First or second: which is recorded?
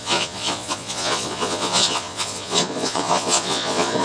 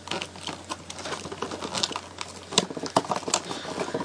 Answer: second